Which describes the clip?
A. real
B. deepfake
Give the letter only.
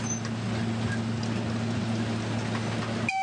A